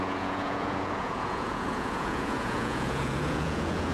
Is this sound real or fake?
fake